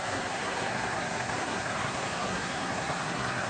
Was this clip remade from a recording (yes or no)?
yes